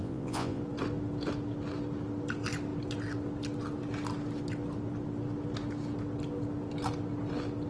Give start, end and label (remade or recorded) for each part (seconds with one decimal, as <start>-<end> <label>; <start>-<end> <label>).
0.0-0.6 remade; 0.6-7.7 recorded